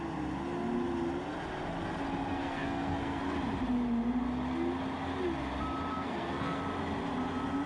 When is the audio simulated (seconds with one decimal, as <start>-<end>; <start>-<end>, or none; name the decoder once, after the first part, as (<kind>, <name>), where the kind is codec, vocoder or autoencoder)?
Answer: 2.3-3.2 (codec, SNAC); 5.9-6.6